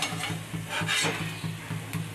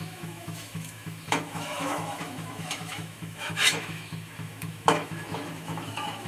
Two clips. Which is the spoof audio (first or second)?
second